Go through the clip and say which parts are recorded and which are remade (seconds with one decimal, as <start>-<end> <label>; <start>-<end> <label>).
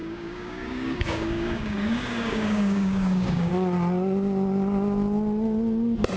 0.0-3.5 remade; 3.5-6.2 recorded